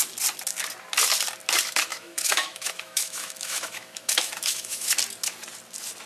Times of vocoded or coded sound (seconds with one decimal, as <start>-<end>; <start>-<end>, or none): 1.9-4.9